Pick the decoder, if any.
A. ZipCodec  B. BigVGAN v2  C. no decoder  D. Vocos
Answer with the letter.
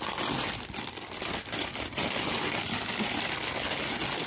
C